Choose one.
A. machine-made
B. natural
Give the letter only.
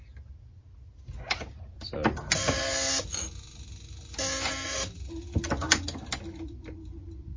B